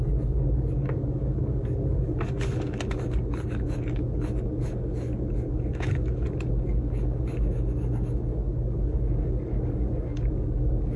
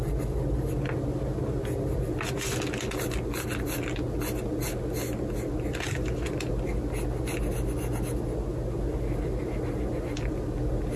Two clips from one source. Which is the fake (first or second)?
first